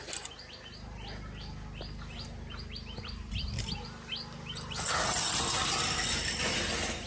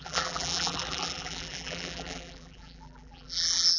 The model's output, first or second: second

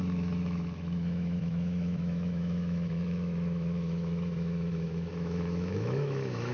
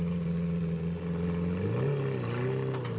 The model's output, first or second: first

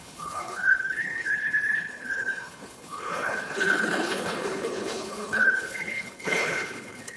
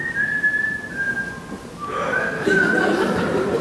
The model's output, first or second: first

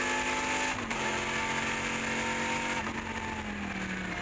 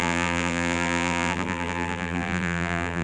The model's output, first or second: second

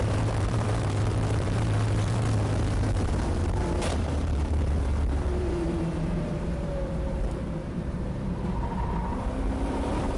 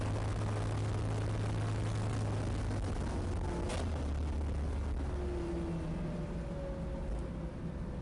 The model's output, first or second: first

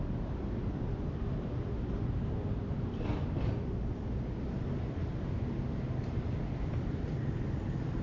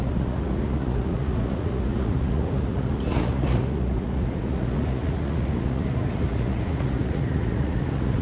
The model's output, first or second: second